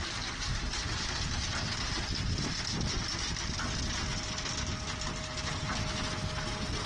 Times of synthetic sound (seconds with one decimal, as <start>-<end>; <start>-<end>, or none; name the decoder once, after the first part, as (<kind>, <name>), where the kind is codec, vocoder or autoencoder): none